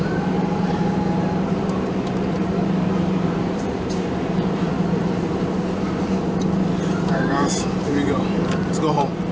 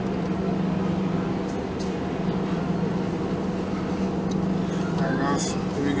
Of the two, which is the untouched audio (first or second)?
second